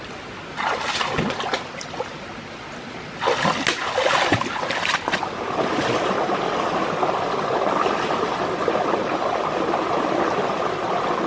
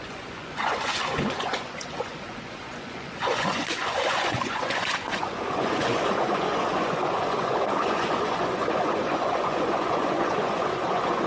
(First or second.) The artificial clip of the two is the second